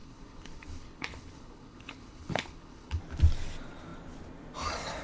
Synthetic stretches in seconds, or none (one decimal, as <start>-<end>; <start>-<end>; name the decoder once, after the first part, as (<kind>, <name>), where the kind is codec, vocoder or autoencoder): 0.0-3.0 (codec, HILCodec)